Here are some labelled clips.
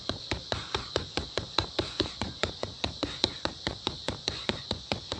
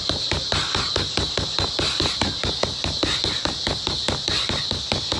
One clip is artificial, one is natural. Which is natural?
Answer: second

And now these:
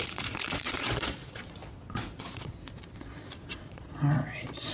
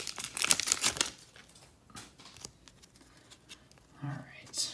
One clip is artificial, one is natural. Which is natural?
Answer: second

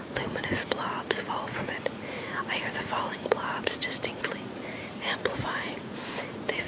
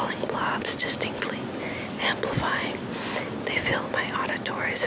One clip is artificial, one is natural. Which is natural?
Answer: second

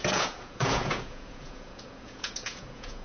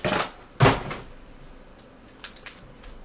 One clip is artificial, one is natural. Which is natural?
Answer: second